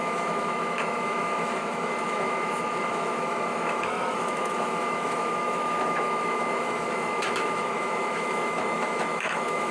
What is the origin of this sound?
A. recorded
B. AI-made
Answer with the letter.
B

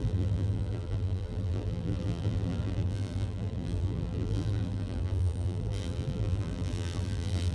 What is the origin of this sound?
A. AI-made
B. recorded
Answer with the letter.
A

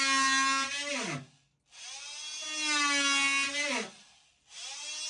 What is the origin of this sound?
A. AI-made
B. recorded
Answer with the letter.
B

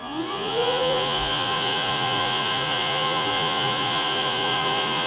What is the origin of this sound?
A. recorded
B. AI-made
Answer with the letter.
B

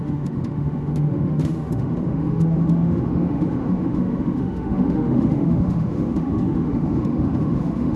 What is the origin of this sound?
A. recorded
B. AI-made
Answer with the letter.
B